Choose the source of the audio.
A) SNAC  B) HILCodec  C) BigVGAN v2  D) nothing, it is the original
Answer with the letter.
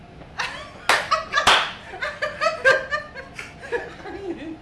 D